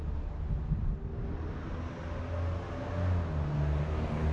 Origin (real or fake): real